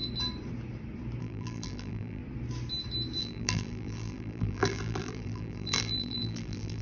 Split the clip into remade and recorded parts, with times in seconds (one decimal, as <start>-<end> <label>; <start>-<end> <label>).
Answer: 0.0-1.2 recorded; 1.2-2.2 remade; 2.2-3.2 recorded; 3.2-6.8 remade